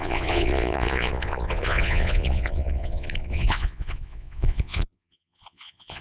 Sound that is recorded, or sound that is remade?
remade